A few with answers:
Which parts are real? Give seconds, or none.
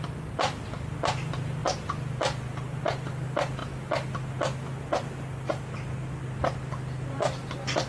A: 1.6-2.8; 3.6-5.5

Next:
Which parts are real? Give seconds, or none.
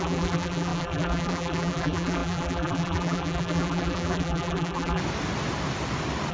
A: 5.0-6.3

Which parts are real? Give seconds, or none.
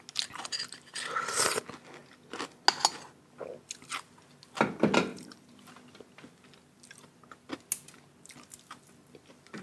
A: 0.0-5.1; 5.7-9.6